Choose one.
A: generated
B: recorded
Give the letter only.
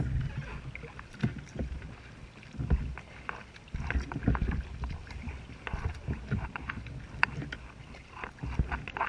B